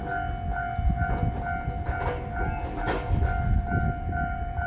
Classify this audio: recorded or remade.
recorded